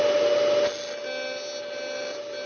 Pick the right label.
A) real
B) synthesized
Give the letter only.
A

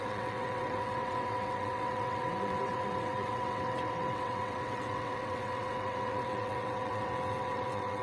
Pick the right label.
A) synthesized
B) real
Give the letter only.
A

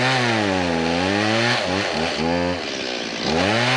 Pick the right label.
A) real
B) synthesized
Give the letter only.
A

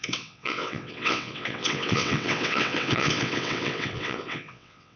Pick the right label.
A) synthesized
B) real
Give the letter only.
A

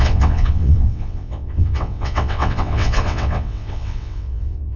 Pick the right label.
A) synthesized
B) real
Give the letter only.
A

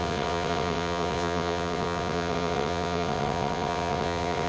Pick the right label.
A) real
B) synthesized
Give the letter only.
B